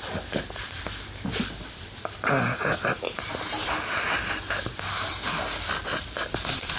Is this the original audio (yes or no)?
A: yes